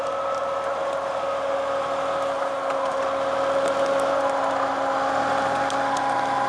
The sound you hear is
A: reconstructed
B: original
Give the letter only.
B